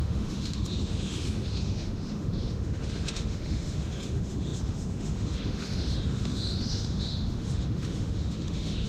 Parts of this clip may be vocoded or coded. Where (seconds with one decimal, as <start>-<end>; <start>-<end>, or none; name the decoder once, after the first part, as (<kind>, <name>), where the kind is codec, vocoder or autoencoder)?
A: 0.0-8.9 (autoencoder, DAC-VAE)